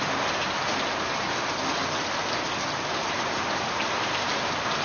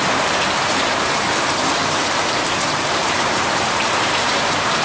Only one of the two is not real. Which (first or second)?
second